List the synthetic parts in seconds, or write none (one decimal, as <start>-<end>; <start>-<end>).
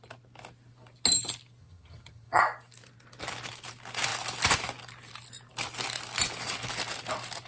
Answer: 1.6-2.4